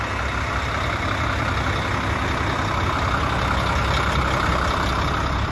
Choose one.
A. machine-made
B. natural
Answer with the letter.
B